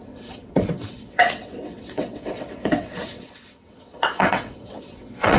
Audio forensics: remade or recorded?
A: remade